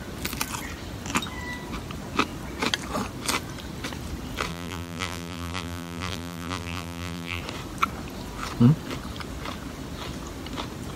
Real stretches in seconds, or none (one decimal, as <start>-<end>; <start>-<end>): 0.0-4.5; 7.4-11.0